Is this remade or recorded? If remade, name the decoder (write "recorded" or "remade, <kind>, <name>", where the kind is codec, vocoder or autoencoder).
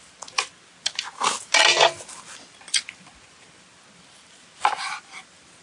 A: recorded